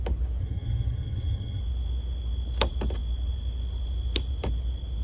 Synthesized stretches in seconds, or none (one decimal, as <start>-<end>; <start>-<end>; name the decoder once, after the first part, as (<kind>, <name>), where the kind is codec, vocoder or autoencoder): 0.4-1.6 (vocoder, HiFi-GAN)